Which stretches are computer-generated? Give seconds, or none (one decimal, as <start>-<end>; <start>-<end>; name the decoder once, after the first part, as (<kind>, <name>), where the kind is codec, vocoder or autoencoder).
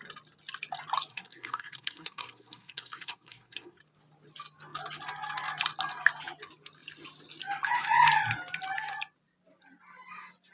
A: 1.1-3.8 (codec, SNAC)